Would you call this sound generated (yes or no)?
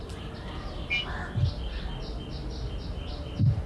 no